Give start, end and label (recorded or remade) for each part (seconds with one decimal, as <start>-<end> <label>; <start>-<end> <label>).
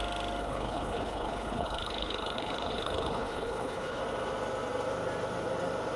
0.0-0.4 recorded; 0.4-4.0 remade; 4.0-6.0 recorded